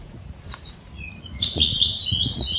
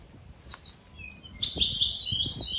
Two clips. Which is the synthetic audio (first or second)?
first